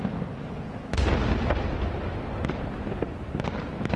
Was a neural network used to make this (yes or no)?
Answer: no